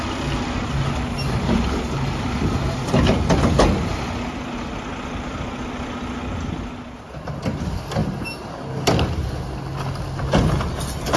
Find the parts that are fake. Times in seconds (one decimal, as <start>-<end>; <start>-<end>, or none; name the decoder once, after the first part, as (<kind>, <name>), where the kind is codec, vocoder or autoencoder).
none